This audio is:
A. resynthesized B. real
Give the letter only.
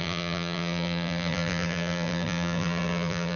A